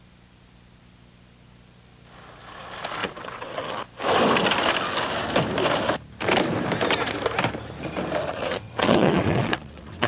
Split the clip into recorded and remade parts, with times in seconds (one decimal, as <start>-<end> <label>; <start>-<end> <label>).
0.0-3.0 recorded; 3.0-3.8 remade; 3.8-8.3 recorded; 8.3-10.1 remade